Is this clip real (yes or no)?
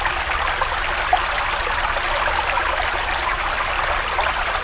yes